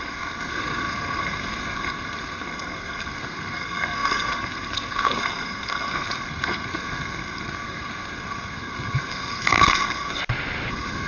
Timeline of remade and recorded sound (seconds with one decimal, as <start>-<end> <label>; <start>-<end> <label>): 0.0-10.2 remade; 10.2-10.7 recorded; 10.7-11.1 remade